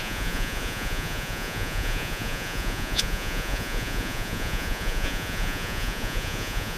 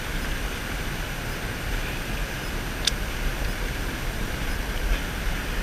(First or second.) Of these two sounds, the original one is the second